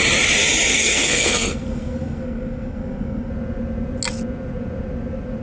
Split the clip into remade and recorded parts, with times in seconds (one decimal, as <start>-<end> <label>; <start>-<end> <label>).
0.0-0.7 recorded; 0.7-3.3 remade; 3.3-5.4 recorded